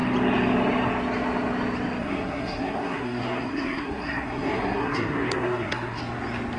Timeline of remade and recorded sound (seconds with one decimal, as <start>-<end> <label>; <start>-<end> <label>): 0.0-2.0 recorded; 2.0-6.0 remade; 6.0-6.6 recorded